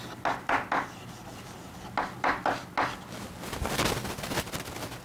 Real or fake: real